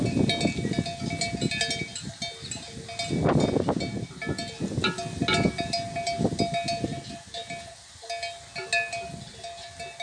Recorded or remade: recorded